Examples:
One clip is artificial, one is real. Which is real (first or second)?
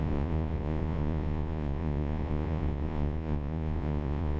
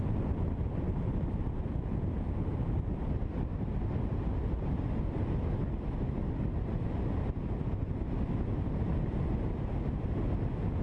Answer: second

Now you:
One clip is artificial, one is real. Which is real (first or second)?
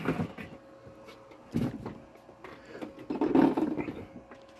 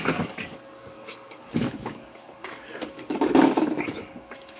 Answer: first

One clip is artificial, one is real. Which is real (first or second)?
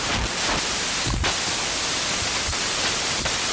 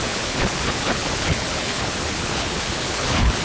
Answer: first